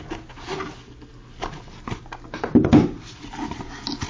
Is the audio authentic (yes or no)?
yes